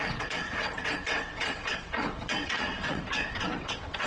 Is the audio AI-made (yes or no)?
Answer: yes